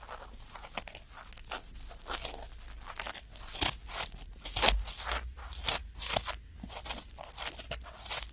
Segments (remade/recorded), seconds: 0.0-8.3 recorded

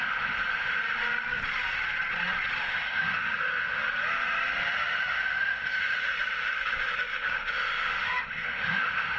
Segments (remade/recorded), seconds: 0.0-0.8 remade; 0.8-2.6 recorded; 2.6-3.8 remade; 3.8-4.7 recorded; 4.7-9.2 remade